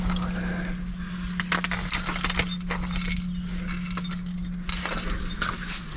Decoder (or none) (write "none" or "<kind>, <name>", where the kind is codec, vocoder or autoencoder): none